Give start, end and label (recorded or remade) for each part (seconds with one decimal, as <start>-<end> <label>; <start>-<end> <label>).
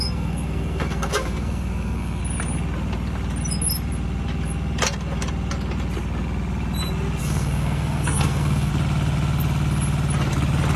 0.0-2.2 remade; 2.2-7.2 recorded; 7.2-8.7 remade; 8.7-10.8 recorded